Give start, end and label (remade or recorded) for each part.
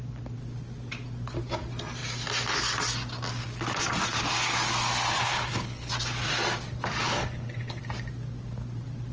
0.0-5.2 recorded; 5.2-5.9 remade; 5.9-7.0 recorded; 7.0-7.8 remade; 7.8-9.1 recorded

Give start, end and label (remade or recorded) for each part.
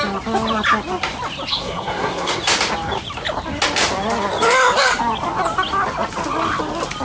0.0-1.5 recorded; 1.5-2.4 remade; 2.4-7.0 recorded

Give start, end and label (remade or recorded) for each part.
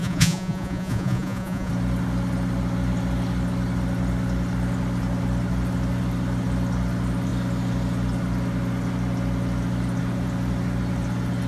0.0-1.7 remade; 1.7-11.5 recorded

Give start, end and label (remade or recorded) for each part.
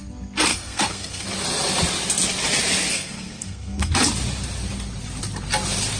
0.0-0.5 recorded; 0.5-1.3 remade; 1.3-2.9 recorded; 2.9-3.9 remade; 3.9-6.0 recorded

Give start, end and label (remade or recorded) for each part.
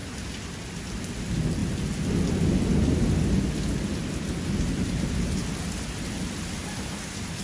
0.0-7.4 recorded